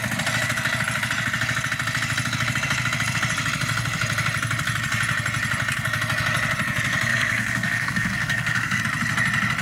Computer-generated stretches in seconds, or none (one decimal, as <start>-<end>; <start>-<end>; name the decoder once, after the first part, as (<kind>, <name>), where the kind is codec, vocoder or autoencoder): 7.1-8.8 (codec, SNAC)